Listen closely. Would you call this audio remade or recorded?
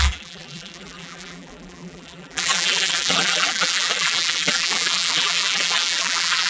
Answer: remade